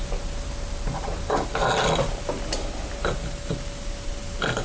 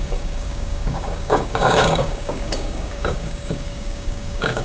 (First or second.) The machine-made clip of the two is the second